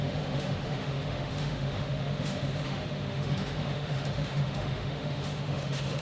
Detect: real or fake fake